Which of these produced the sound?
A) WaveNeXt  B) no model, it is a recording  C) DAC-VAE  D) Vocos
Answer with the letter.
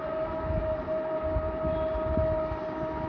B